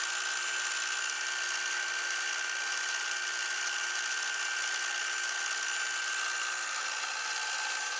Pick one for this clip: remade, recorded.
recorded